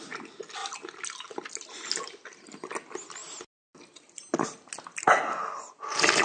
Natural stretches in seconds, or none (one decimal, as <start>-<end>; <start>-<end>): 0.0-6.2